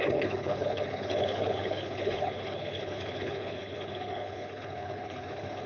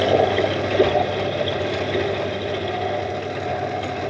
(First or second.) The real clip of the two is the second